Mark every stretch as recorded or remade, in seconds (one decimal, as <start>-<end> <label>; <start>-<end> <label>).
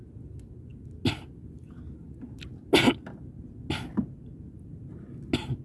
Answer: 0.0-5.6 recorded